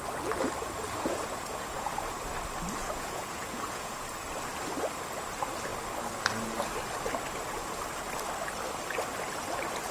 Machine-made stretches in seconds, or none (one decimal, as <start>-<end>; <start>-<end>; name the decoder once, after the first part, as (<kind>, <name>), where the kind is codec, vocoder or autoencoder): 1.1-1.9 (vocoder, Vocos); 2.8-4.3